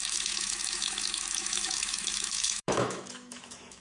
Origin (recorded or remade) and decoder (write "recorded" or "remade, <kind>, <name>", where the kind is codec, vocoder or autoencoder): remade, autoencoder, DAC-VAE